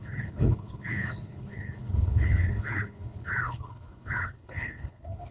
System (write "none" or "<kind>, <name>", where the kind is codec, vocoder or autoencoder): codec, HILCodec